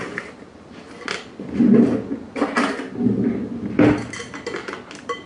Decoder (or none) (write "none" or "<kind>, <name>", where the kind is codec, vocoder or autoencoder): none